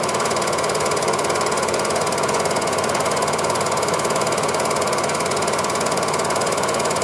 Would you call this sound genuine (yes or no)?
no